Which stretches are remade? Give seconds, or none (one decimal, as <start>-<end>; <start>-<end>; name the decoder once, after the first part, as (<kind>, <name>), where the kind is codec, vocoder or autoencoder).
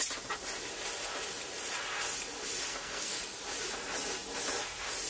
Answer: 2.7-3.2 (codec, SNAC)